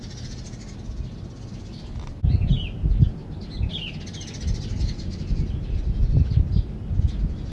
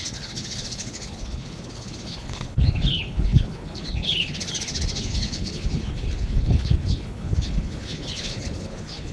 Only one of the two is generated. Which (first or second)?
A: second